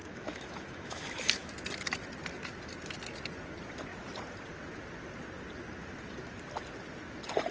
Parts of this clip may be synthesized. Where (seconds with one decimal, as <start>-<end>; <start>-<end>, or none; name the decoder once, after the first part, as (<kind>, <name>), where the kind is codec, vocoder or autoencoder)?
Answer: 0.0-1.5 (autoencoder, DAC-VAE)